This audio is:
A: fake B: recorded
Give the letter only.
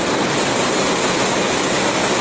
B